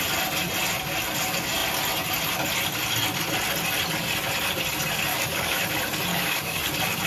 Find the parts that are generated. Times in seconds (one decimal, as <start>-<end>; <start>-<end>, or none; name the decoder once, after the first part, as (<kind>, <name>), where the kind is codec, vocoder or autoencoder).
5.1-5.6 (codec, DAC); 6.1-6.6